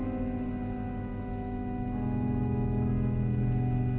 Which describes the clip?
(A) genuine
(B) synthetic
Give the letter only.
A